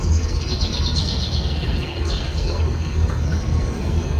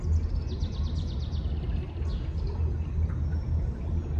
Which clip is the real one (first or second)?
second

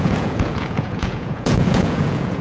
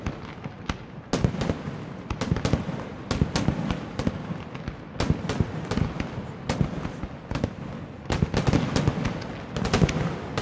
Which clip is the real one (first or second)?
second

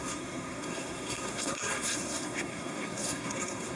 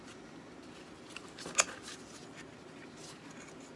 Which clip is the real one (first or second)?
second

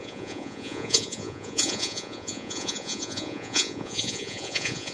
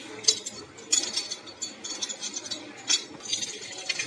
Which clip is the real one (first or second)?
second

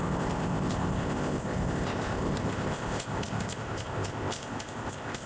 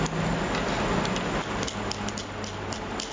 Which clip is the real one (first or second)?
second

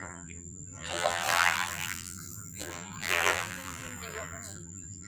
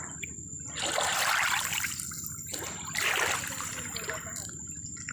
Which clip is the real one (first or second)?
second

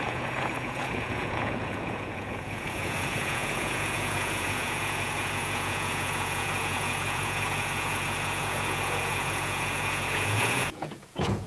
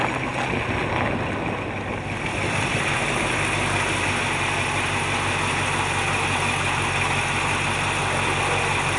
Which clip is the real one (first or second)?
second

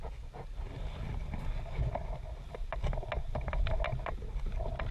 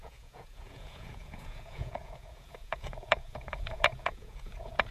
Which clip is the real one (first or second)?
first